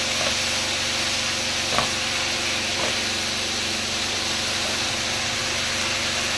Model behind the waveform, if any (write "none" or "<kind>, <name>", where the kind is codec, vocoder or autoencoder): none